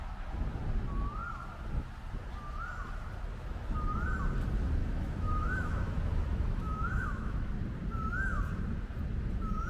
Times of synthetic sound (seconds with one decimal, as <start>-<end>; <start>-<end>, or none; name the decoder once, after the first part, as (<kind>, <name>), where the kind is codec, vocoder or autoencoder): 4.8-7.5 (autoencoder, DAC-VAE)